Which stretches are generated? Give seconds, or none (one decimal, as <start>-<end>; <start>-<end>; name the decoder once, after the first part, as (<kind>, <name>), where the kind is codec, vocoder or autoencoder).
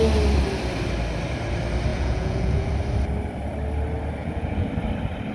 1.9-2.7 (vocoder, Vocos); 4.2-4.7